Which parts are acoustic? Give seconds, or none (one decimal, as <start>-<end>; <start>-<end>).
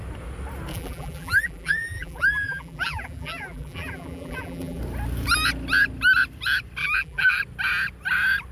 0.0-0.7; 4.8-6.8; 7.4-8.5